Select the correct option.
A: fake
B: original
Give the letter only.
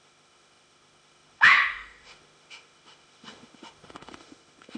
A